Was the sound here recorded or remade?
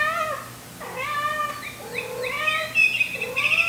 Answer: recorded